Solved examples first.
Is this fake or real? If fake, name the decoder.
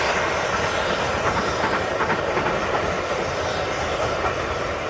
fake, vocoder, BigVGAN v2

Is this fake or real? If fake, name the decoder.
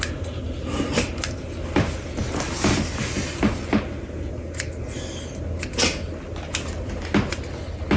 real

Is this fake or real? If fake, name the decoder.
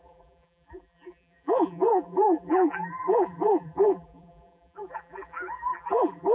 fake, vocoder, BigVGAN v2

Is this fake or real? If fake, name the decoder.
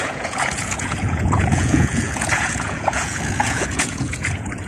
fake, vocoder, Vocos